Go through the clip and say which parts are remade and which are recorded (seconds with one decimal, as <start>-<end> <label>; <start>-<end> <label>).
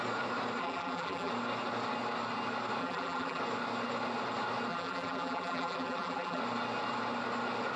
0.0-0.6 recorded; 0.6-1.3 remade; 1.3-2.8 recorded; 2.8-3.4 remade; 3.4-4.7 recorded; 4.7-6.4 remade; 6.4-7.8 recorded